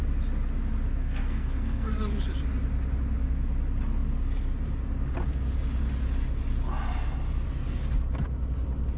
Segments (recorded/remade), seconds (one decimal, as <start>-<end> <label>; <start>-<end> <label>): 0.0-1.0 recorded; 1.0-2.2 remade; 2.2-9.0 recorded